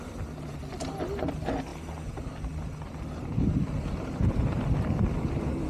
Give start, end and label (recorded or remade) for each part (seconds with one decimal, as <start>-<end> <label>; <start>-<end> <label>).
0.0-5.7 recorded